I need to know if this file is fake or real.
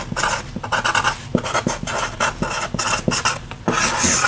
real